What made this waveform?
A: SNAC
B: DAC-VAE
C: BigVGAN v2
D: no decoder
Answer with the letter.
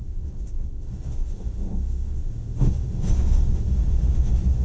B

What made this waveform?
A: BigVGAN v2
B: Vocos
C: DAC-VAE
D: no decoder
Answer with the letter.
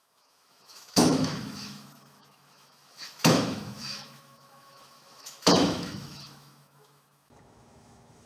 C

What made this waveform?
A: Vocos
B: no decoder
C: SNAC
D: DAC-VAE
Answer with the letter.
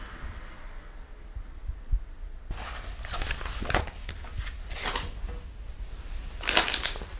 B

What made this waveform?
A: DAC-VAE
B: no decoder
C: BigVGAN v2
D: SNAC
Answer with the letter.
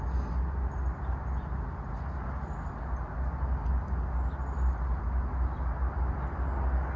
B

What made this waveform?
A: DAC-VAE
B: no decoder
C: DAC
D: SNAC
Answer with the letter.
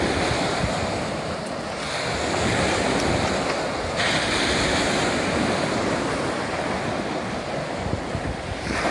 B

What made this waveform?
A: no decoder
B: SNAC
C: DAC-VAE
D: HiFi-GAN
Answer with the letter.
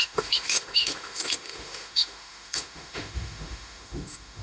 C